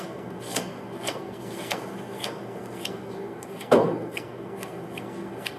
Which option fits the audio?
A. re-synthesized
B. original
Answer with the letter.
A